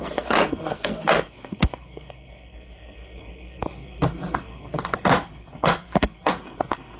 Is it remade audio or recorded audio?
remade